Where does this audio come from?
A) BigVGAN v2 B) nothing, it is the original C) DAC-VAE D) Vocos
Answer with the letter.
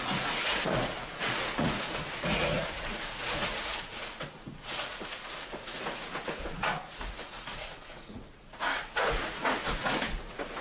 D